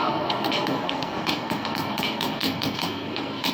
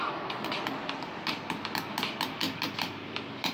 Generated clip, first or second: first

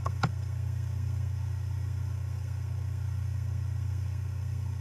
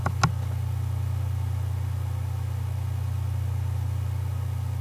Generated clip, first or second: first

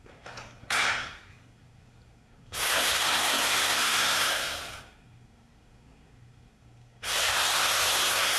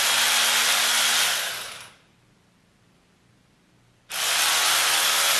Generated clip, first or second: first